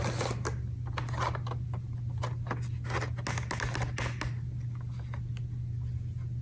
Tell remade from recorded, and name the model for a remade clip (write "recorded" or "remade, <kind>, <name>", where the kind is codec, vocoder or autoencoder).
recorded